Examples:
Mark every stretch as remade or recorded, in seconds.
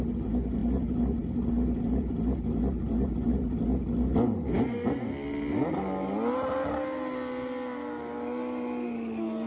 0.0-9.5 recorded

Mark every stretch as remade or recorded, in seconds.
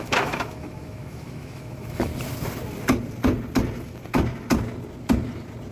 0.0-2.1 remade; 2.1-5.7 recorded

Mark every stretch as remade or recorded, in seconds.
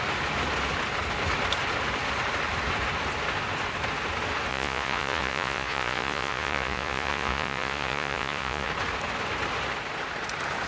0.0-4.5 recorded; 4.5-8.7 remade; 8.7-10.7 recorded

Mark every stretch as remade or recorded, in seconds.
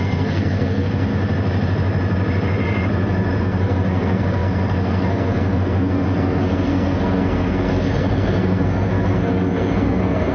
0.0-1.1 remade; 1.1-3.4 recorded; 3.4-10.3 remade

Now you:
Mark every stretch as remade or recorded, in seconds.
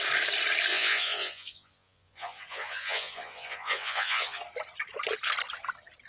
0.0-0.7 recorded; 0.7-4.4 remade; 4.4-6.1 recorded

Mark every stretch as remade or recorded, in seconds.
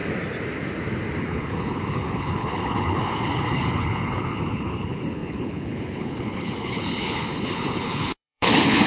0.0-1.2 recorded; 1.2-8.9 remade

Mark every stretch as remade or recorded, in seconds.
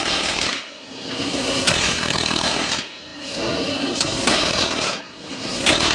0.0-5.9 remade